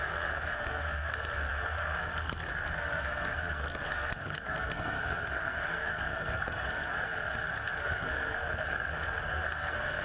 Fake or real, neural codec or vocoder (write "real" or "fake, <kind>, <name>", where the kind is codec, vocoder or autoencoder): fake, codec, SNAC